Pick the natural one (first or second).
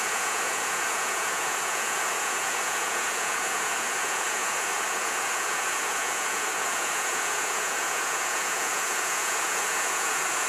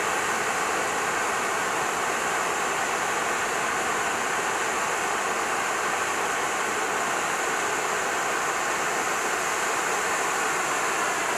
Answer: second